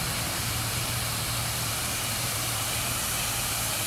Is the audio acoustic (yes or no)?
yes